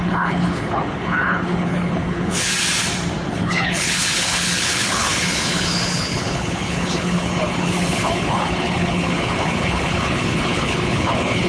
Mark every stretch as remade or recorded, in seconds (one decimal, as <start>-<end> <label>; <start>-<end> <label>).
0.0-2.5 remade; 2.5-3.3 recorded; 3.3-11.5 remade